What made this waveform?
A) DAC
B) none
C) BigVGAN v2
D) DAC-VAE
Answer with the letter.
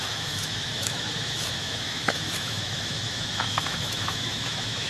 D